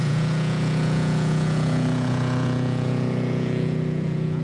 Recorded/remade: remade